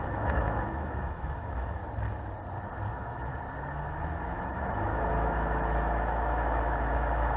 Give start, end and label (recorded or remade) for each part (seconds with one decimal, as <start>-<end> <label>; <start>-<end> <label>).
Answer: 0.0-1.8 remade; 1.8-2.9 recorded; 2.9-3.3 remade; 3.3-4.2 recorded; 4.2-7.4 remade